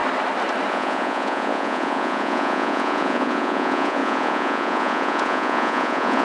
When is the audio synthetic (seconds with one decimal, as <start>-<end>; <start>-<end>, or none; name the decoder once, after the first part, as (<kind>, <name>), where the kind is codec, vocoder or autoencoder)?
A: 0.7-6.2 (vocoder, Vocos)